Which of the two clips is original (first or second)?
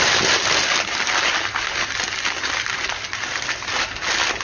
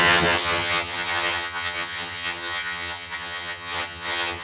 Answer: first